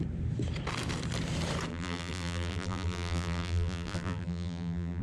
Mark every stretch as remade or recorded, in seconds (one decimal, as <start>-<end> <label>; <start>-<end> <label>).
0.0-1.7 recorded; 1.7-5.0 remade